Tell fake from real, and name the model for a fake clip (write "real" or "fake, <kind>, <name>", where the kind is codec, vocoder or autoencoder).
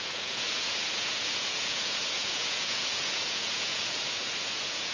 fake, vocoder, Vocos